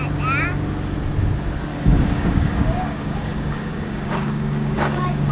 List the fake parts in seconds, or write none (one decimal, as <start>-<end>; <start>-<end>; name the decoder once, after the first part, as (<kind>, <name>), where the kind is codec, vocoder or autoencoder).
1.7-5.3 (codec, DAC)